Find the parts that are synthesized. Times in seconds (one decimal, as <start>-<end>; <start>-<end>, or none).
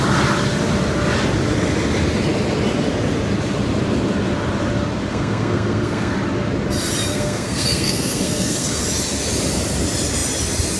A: 5.1-6.1; 7.1-8.8